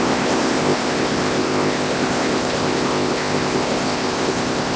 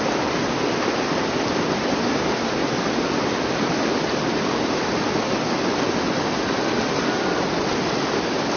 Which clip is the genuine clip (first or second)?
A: second